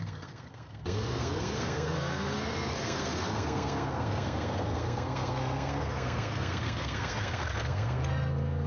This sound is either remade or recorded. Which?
remade